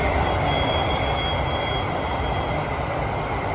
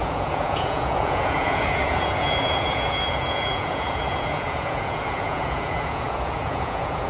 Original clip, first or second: first